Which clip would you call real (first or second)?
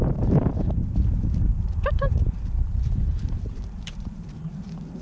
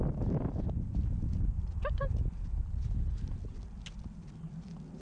second